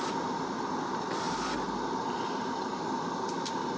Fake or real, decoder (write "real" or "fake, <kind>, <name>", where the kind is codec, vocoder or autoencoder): real